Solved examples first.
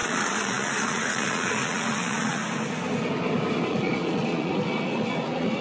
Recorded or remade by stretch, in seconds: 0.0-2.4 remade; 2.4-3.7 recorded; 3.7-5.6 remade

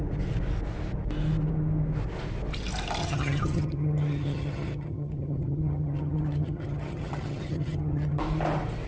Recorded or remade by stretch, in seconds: 0.0-3.0 recorded; 3.0-8.2 remade; 8.2-8.9 recorded

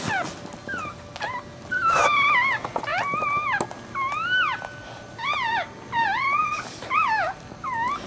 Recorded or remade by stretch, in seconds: 0.0-6.4 recorded; 6.4-7.5 remade; 7.5-8.1 recorded

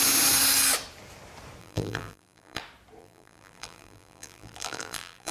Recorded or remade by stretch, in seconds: 0.0-1.6 recorded; 1.6-2.6 remade; 2.6-3.0 recorded; 3.0-5.3 remade

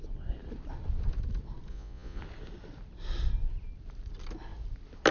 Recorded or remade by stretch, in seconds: 0.0-1.7 recorded; 1.7-2.2 remade; 2.2-5.1 recorded

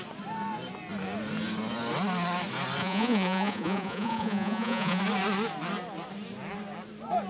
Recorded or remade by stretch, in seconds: 0.0-2.8 recorded; 2.8-5.0 remade; 5.0-7.3 recorded

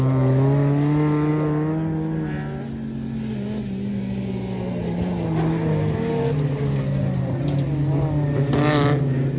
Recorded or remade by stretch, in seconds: 0.0-9.4 recorded

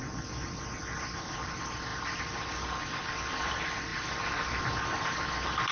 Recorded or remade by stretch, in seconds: 0.0-1.9 recorded; 1.9-3.5 remade; 3.5-3.9 recorded; 3.9-4.7 remade; 4.7-5.7 recorded